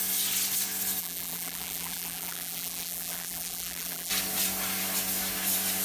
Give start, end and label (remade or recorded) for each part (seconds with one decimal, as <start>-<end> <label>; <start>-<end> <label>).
0.0-1.0 recorded; 1.0-4.1 remade; 4.1-5.8 recorded

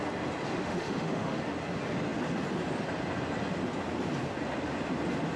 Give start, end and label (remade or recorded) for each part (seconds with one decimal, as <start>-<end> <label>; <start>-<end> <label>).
0.0-0.5 recorded; 0.5-1.4 remade; 1.4-5.4 recorded